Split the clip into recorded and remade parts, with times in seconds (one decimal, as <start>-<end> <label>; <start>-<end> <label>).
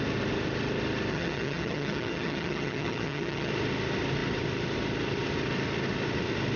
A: 0.0-1.1 recorded; 1.1-3.5 remade; 3.5-6.6 recorded